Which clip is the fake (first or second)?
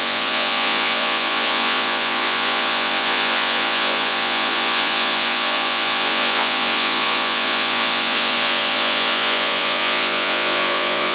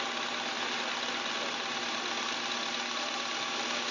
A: first